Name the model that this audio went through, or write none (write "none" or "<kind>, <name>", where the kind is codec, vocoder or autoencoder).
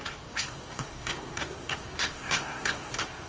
codec, SNAC